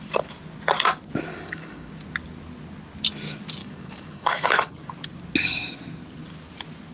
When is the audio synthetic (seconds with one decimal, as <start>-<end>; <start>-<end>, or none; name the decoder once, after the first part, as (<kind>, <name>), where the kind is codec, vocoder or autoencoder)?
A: 1.3-1.9 (codec, DAC); 3.6-4.7